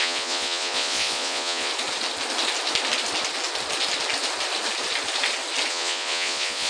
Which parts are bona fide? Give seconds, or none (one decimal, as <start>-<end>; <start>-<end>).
1.7-5.7